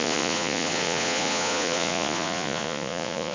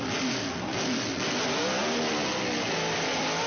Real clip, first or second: second